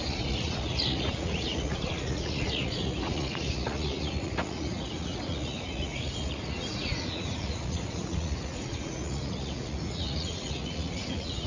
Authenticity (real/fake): fake